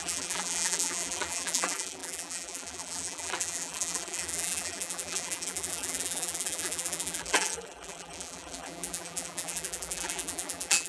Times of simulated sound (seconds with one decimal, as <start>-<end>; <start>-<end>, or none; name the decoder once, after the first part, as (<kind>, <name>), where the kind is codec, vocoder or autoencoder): 0.0-10.9 (vocoder, BigVGAN v2)